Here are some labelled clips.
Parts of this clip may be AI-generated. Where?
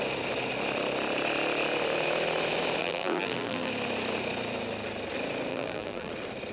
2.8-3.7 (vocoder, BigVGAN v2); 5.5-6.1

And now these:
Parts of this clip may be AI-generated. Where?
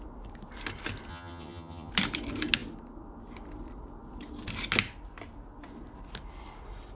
1.1-1.9 (vocoder, HiFi-GAN)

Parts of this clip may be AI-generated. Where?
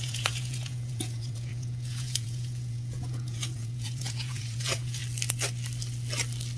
0.0-5.0 (vocoder, Vocos)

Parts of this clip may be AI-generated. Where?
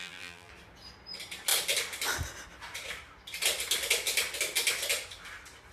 0.0-0.5 (vocoder, BigVGAN v2)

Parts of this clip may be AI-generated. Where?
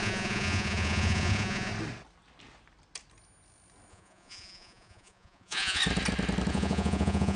0.0-1.7 (vocoder, Vocos); 3.9-5.8; 6.5-7.4